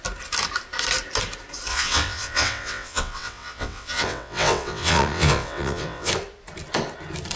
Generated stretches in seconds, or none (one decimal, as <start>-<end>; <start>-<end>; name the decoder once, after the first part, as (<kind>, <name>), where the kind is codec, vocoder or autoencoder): 1.7-6.1 (vocoder, WaveNeXt)